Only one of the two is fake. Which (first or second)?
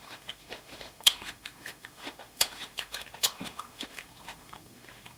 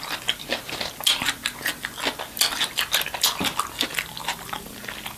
first